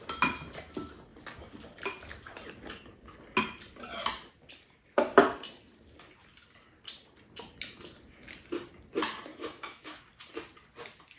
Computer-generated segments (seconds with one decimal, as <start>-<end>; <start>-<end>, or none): 9.3-10.0